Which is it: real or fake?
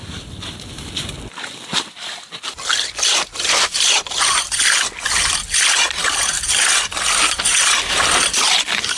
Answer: real